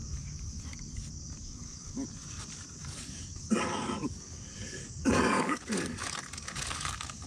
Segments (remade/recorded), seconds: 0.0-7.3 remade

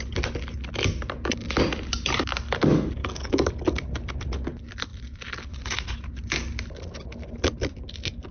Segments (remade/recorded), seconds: 0.0-3.0 recorded; 3.0-3.5 remade; 3.5-8.3 recorded

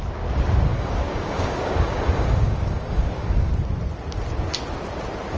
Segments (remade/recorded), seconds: 0.0-0.7 recorded; 0.7-3.5 remade; 3.5-5.4 recorded

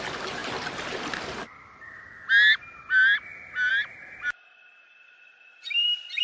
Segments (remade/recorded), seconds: 0.0-6.2 recorded